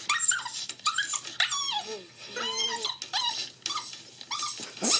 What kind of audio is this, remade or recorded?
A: recorded